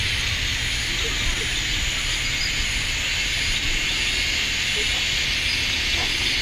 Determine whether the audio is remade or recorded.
recorded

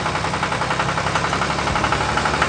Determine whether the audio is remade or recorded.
recorded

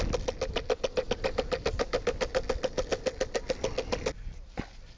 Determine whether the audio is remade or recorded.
recorded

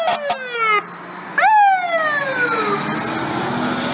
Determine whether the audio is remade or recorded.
recorded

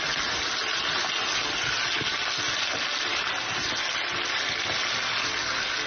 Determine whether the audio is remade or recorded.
recorded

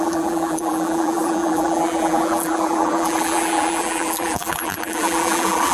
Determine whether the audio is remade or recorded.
remade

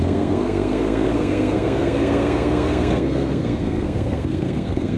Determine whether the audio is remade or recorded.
remade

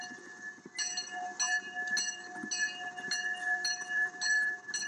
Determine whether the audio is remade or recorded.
recorded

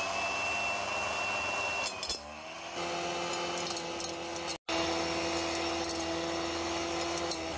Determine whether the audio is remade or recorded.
recorded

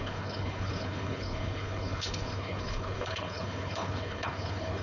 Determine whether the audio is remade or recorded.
remade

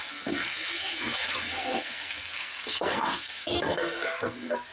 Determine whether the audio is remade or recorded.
remade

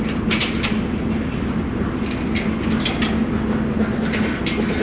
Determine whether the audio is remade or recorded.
recorded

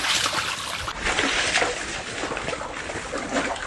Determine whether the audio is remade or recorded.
recorded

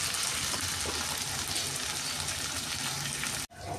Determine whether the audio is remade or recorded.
recorded